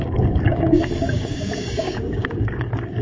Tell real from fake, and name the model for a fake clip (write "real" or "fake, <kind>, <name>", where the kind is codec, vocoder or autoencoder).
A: fake, codec, DAC